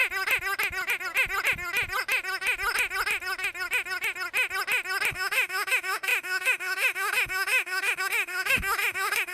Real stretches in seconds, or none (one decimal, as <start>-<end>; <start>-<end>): 0.0-5.1